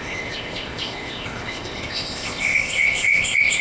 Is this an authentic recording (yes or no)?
no